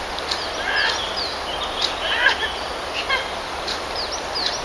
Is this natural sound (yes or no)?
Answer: yes